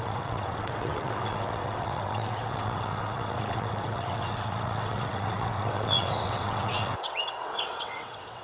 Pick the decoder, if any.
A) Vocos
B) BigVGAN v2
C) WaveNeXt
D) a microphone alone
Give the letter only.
C